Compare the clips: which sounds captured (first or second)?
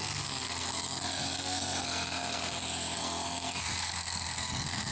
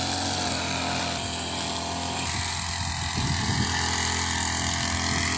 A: second